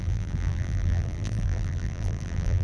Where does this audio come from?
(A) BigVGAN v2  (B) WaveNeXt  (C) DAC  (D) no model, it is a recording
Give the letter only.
A